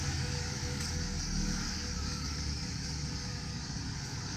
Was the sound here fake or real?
fake